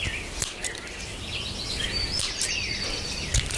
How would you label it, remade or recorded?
recorded